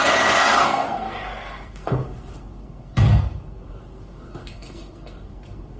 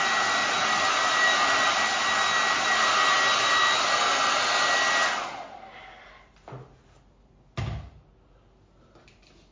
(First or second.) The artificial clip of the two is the first